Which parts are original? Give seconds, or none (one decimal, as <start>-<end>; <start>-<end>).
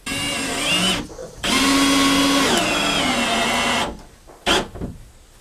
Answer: 0.0-5.4